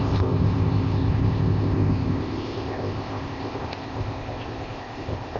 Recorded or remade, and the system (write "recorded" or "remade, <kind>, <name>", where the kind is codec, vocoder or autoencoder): remade, codec, ZipCodec